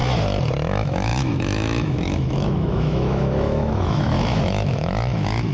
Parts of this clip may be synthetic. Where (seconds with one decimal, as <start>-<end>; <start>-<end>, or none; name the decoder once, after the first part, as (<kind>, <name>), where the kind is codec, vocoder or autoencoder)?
0.7-5.5 (autoencoder, DAC-VAE)